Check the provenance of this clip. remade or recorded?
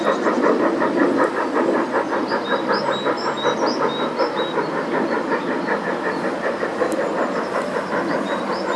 remade